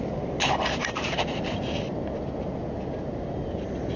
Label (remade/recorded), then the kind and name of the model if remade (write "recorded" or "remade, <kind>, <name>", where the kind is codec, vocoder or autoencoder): recorded